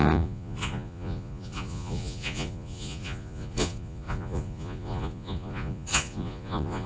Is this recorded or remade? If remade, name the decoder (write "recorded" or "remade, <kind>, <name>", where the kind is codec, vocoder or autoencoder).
remade, vocoder, Vocos